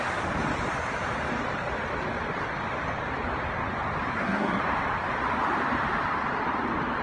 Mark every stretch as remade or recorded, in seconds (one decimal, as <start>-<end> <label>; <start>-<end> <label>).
0.0-4.1 recorded; 4.1-4.6 remade; 4.6-7.0 recorded